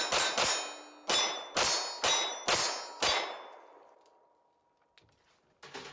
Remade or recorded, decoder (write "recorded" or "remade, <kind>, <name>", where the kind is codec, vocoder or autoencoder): recorded